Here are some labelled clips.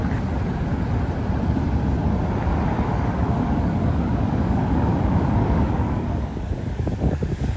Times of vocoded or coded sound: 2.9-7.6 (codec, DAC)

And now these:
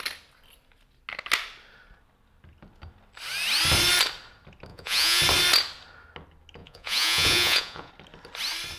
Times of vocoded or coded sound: 4.7-5.2 (vocoder, Vocos); 6.6-7.9

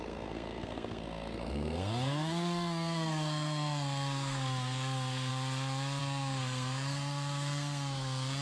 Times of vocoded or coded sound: 0.0-5.3 (codec, SNAC); 6.0-8.4

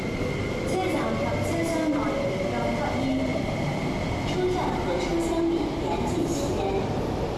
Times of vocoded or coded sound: 3.3-3.9 (vocoder, BigVGAN v2)

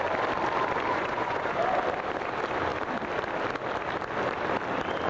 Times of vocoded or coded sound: 0.9-1.6 (vocoder, Vocos)

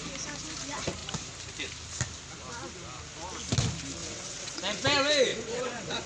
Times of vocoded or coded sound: 4.0-4.6 (vocoder, WaveNeXt); 5.3-6.1